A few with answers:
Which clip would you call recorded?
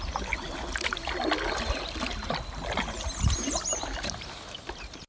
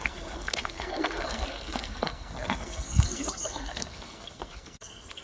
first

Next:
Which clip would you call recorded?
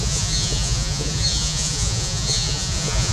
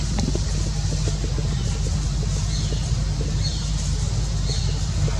second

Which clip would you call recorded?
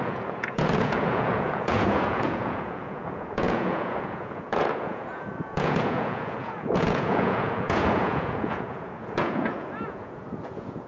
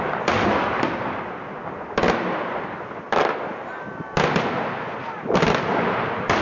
second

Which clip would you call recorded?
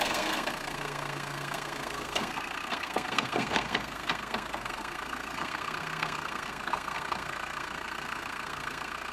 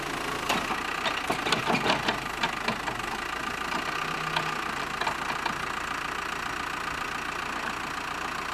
second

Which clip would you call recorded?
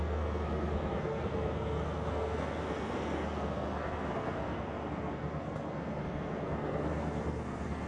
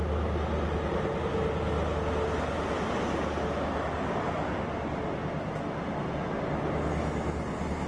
second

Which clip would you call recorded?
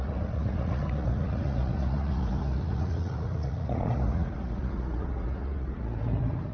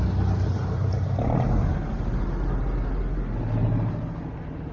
second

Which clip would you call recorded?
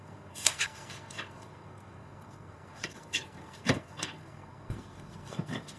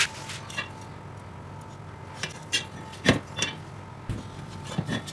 second